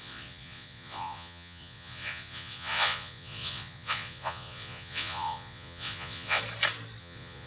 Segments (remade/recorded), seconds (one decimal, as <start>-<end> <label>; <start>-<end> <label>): 0.0-6.4 remade; 6.4-7.0 recorded; 7.0-7.5 remade